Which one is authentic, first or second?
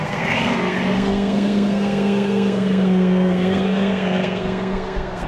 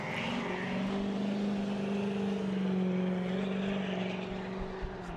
second